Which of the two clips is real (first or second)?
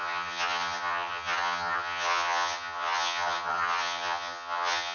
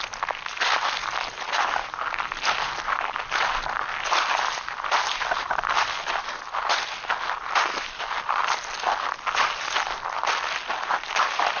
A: second